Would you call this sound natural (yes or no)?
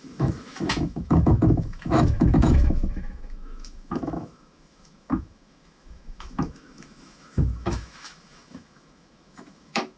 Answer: no